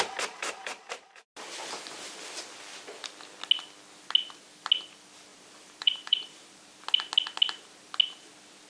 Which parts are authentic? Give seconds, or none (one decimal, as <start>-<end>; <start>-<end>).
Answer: 0.0-0.4; 1.3-5.3; 6.8-8.7